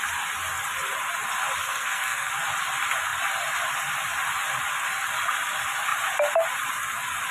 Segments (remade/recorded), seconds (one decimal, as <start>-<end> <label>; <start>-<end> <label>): 0.0-1.6 recorded; 1.6-2.3 remade; 2.3-7.3 recorded